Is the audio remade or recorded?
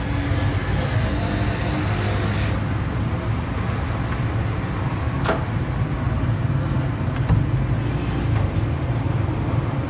recorded